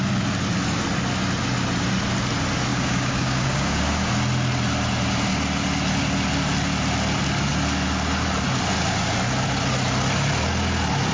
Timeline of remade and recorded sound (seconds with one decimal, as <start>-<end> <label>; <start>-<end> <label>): 0.0-2.7 recorded; 2.7-4.1 remade; 4.1-11.1 recorded